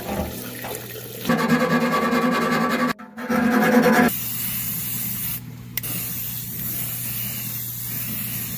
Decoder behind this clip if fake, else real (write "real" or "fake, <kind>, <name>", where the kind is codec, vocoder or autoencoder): real